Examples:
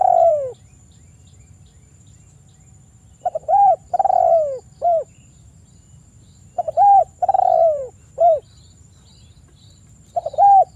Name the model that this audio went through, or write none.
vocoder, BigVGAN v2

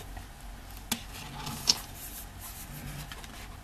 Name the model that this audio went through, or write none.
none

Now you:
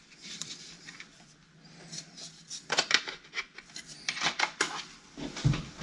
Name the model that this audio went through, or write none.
vocoder, BigVGAN v2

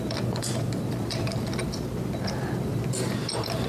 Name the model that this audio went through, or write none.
vocoder, BigVGAN v2